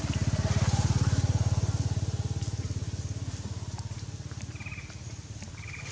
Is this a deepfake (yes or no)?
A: no